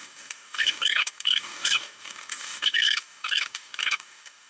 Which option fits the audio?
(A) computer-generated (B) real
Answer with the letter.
A